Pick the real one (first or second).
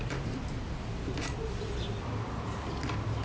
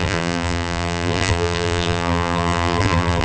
first